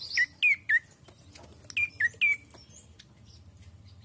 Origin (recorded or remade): recorded